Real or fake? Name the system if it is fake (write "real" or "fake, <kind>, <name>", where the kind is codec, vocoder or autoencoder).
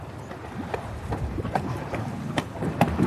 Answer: real